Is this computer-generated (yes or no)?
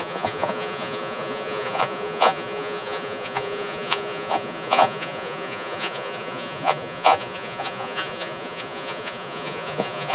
yes